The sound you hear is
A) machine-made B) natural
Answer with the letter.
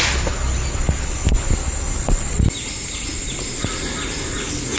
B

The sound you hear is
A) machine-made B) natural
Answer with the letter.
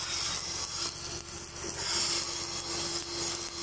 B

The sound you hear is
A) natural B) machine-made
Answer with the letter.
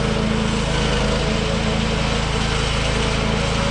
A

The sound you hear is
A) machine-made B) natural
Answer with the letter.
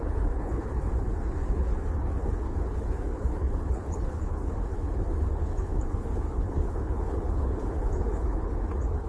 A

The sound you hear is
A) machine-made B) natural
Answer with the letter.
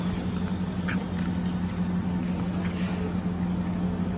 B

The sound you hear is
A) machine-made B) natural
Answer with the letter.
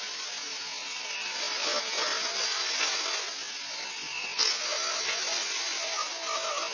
B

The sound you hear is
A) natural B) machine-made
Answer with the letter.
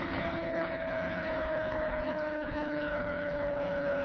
B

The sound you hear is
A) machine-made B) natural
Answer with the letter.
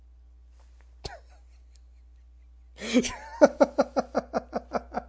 B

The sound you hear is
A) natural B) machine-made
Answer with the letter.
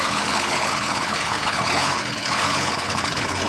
B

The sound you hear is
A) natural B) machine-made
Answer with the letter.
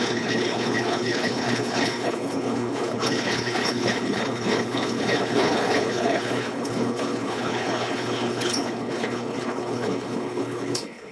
B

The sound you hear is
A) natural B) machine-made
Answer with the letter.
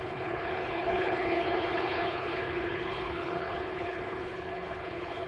B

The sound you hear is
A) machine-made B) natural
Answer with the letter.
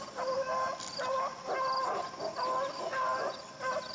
B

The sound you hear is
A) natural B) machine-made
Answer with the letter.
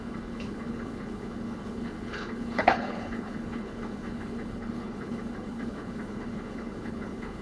B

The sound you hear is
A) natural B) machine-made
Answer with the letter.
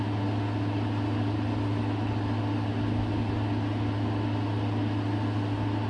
A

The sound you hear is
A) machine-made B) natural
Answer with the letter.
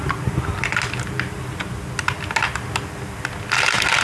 B